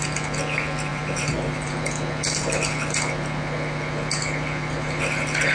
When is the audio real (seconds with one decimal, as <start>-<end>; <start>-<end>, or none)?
0.0-0.9; 1.8-5.5